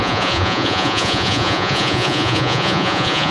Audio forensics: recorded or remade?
remade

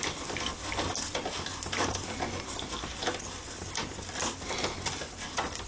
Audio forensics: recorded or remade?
recorded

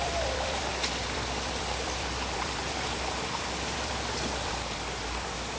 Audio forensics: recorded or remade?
remade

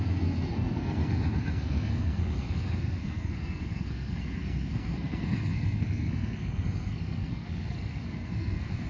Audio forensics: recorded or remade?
remade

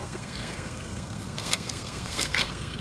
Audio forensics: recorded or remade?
remade